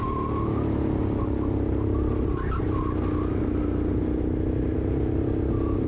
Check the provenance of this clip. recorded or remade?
recorded